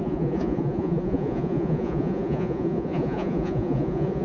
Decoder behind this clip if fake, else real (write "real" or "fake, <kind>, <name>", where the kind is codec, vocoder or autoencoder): fake, vocoder, Vocos